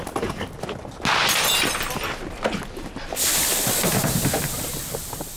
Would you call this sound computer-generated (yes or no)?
no